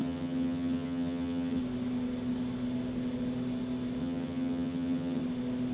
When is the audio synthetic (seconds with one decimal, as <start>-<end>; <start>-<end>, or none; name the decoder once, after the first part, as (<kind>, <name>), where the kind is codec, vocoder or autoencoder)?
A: 0.0-1.6 (vocoder, HiFi-GAN); 4.0-5.2